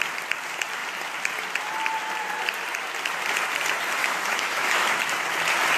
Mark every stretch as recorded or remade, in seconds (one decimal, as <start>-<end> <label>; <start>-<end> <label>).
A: 0.0-4.0 recorded; 4.0-4.9 remade; 4.9-5.8 recorded